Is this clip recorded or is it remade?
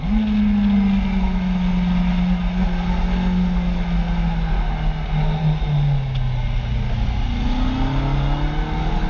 recorded